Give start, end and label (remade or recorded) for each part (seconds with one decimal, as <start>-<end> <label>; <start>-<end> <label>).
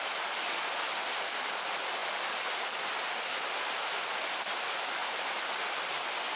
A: 0.0-6.4 recorded